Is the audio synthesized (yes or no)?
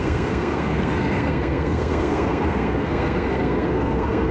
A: yes